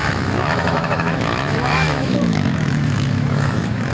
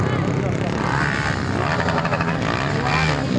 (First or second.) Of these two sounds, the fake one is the first